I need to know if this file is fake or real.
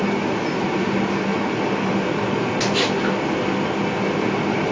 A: real